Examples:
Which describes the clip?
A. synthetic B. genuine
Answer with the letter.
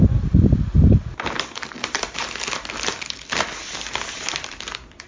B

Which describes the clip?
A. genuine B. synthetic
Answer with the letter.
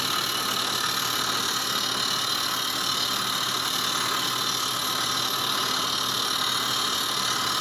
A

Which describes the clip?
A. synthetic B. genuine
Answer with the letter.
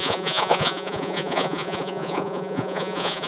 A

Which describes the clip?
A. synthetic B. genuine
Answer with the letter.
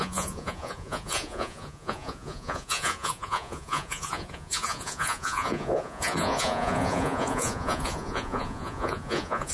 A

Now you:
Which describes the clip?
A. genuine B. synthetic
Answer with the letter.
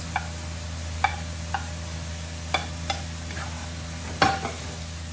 A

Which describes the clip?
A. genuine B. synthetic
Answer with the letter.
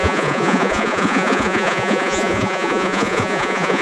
B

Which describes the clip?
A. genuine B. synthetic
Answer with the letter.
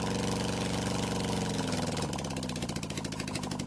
A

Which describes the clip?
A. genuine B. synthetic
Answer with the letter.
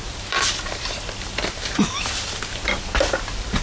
B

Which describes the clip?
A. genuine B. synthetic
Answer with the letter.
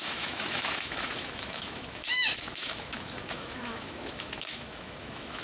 B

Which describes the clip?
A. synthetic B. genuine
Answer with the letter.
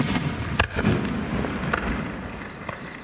B